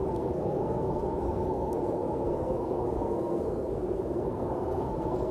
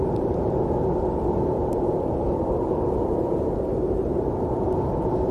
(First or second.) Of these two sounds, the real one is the second